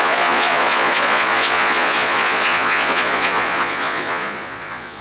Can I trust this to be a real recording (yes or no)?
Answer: no